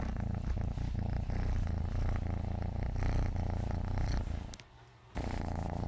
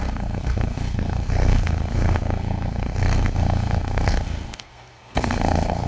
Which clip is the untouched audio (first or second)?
first